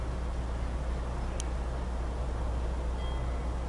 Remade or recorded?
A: recorded